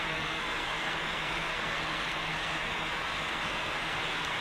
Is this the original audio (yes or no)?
no